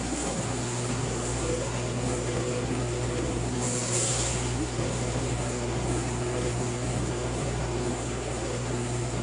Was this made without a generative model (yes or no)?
no